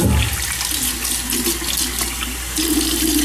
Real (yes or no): yes